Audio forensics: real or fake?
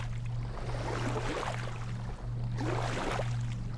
real